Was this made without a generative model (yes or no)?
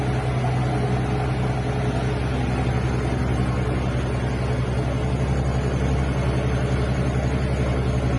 yes